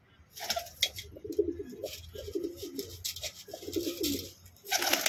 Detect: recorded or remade recorded